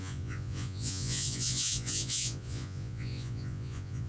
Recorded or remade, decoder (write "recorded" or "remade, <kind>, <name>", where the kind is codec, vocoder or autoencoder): remade, vocoder, Vocos